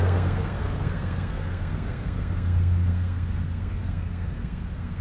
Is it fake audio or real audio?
fake